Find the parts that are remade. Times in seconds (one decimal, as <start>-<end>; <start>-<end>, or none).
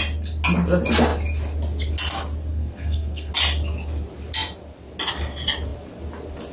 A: 2.5-3.3